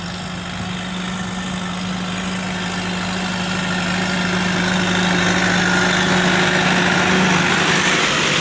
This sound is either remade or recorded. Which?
recorded